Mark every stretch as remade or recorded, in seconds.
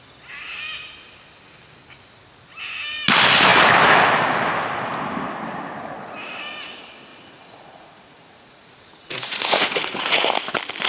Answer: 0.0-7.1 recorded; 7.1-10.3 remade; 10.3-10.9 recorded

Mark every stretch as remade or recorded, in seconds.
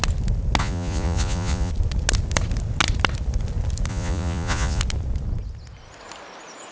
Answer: 0.0-0.6 recorded; 0.6-1.7 remade; 1.7-3.9 recorded; 3.9-4.8 remade; 4.8-6.7 recorded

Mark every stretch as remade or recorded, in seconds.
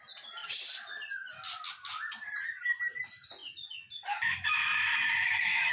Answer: 0.0-5.7 recorded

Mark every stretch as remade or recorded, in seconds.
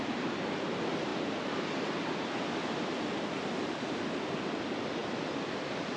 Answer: 0.0-1.1 remade; 1.1-4.6 recorded; 4.6-6.0 remade